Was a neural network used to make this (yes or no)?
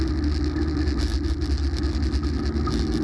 no